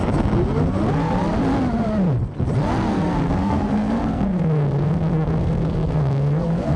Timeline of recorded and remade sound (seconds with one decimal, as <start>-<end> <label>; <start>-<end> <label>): 0.0-2.9 recorded; 2.9-6.8 remade